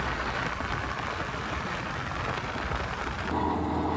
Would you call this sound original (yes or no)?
yes